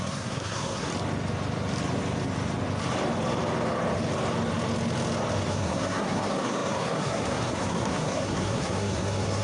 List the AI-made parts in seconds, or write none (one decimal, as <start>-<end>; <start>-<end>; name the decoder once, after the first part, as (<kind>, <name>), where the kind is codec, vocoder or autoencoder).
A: 0.0-0.9 (codec, SNAC); 5.5-9.4

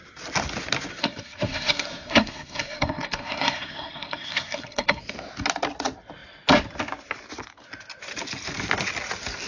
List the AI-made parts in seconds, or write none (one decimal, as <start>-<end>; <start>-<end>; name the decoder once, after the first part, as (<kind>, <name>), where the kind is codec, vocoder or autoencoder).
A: 1.0-5.0 (codec, SNAC)

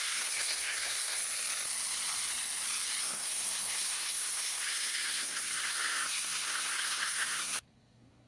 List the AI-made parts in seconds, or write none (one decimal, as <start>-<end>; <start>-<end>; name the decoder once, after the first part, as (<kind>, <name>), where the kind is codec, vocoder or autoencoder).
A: 0.0-1.2 (codec, SNAC); 3.0-8.3

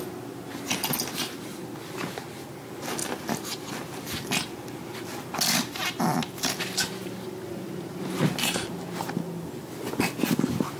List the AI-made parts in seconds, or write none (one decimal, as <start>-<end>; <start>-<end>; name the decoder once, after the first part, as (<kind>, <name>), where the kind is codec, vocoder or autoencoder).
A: none

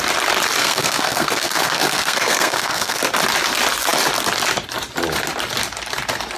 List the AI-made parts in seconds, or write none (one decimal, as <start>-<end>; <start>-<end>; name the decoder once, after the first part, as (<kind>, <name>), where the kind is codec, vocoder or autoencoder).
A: 0.6-3.0 (codec, SNAC)

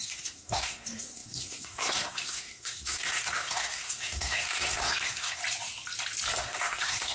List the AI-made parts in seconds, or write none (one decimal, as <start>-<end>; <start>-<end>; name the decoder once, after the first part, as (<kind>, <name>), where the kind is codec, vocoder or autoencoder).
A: 0.0-5.4 (codec, SNAC); 6.4-7.1